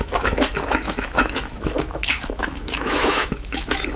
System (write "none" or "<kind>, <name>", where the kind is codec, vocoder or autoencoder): autoencoder, DAC-VAE